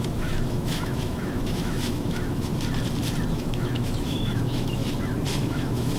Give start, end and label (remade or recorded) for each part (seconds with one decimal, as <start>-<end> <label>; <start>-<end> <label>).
0.0-2.5 remade; 2.5-3.3 recorded; 3.3-4.8 remade; 4.8-5.4 recorded; 5.4-6.0 remade